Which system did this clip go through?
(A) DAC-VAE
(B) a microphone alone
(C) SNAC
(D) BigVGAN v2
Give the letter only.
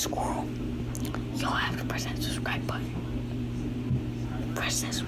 B